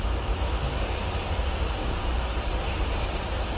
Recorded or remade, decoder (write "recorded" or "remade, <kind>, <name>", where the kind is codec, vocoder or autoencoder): recorded